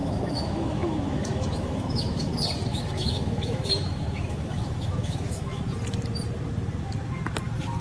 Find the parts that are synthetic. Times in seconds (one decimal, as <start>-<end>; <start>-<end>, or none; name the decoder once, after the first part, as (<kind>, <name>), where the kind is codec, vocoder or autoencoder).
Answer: 0.0-2.3 (autoencoder, DAC-VAE); 2.7-5.6